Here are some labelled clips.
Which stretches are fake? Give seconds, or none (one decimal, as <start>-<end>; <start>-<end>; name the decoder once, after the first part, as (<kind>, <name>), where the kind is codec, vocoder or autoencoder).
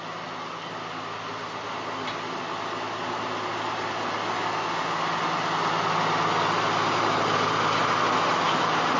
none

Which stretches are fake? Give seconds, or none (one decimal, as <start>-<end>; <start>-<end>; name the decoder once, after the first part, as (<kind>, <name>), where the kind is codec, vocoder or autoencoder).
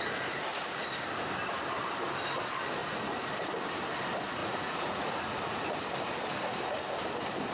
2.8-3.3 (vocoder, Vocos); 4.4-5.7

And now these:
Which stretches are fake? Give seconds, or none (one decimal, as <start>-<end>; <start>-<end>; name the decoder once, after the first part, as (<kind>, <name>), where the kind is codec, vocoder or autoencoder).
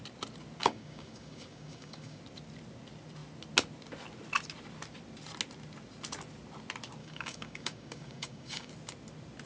0.6-2.2 (codec, DAC); 7.0-8.7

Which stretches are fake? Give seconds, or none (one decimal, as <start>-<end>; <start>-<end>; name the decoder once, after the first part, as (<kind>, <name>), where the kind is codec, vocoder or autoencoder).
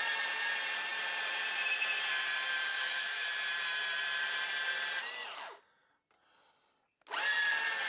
2.7-3.5 (autoencoder, DAC-VAE)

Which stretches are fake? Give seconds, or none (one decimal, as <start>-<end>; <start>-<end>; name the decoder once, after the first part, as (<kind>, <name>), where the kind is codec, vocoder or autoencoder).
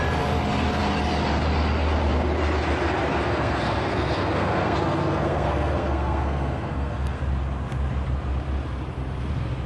3.1-7.2 (codec, SNAC)